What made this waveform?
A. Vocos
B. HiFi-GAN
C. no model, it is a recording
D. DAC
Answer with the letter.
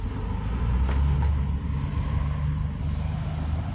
C